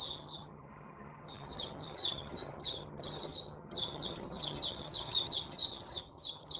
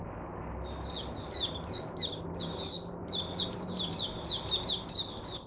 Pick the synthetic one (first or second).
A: first